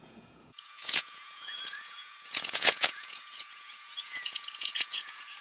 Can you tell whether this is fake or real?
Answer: fake